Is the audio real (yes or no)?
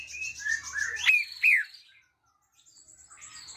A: yes